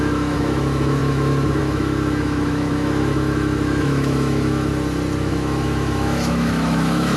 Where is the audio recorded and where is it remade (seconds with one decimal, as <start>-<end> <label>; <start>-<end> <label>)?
0.0-4.7 remade; 4.7-5.2 recorded; 5.2-7.2 remade